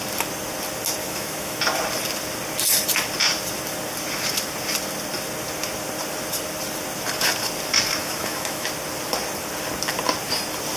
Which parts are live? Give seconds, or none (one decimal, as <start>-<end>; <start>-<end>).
0.0-1.0; 1.6-8.0; 8.7-10.8